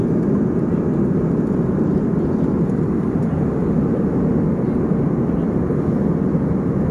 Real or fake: real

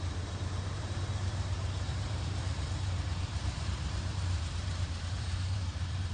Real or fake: fake